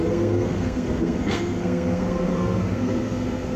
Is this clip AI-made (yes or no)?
yes